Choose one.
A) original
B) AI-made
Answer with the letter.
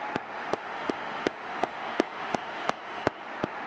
B